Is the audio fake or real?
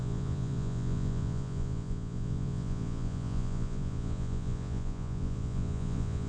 fake